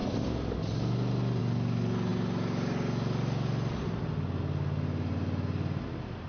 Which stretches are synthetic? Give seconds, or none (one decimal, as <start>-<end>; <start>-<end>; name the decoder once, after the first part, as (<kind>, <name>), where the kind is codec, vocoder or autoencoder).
none